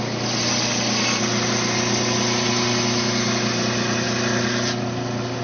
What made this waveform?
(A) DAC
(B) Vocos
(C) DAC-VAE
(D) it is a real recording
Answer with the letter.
D